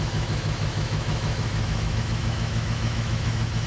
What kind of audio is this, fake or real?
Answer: fake